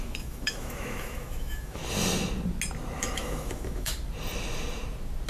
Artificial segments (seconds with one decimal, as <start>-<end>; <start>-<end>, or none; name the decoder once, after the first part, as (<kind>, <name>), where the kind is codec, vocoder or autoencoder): 0.0-1.8 (autoencoder, DAC-VAE); 3.0-3.9